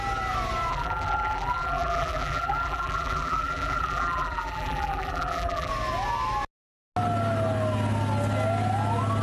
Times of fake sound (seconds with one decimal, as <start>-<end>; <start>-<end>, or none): 0.7-5.7